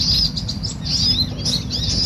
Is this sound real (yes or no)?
yes